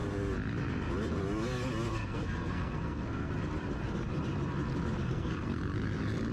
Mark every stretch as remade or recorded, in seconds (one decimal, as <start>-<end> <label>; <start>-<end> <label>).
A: 0.0-1.9 recorded; 1.9-3.3 remade; 3.3-5.0 recorded; 5.0-5.6 remade; 5.6-6.3 recorded